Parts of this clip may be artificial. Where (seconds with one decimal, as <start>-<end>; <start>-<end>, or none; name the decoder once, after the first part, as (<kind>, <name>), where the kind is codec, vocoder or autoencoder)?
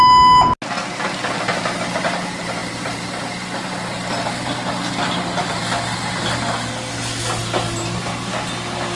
none